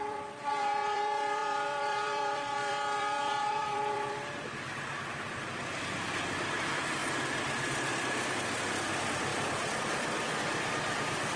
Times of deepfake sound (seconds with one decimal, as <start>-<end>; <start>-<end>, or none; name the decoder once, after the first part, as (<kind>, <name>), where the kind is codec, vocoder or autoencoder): 0.0-9.3 (vocoder, BigVGAN v2); 9.8-11.4